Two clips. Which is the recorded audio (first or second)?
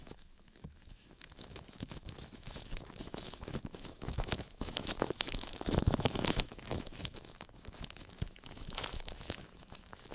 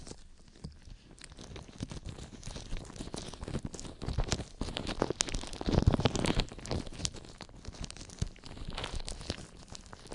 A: second